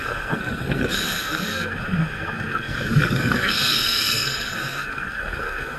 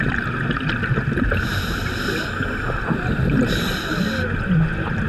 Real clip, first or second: second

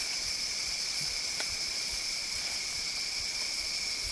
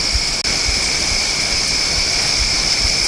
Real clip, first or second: second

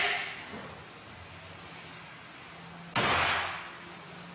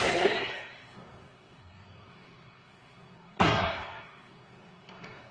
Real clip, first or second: first